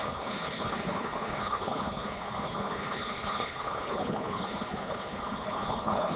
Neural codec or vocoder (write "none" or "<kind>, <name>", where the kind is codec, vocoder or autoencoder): codec, HILCodec